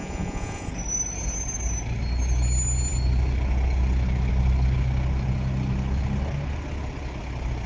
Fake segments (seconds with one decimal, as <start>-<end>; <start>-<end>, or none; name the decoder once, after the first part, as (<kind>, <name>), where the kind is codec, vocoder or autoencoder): 0.0-0.7 (vocoder, Vocos)